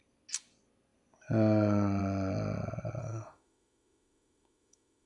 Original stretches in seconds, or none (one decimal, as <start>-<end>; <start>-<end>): 0.0-3.0